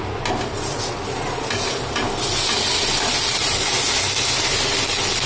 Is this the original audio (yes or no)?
yes